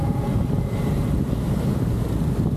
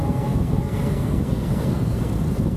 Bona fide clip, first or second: first